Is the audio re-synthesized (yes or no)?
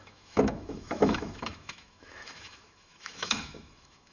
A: yes